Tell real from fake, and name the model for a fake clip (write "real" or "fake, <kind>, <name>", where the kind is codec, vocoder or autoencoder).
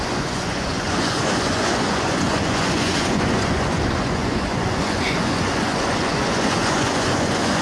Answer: fake, vocoder, Vocos